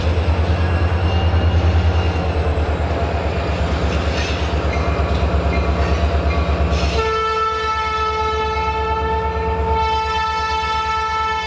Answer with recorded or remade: recorded